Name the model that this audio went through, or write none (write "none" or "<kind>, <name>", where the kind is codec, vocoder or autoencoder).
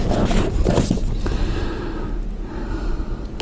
none